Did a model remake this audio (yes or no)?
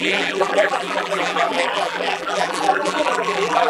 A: yes